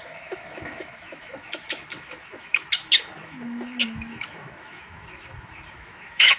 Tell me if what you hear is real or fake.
fake